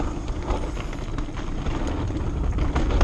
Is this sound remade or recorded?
recorded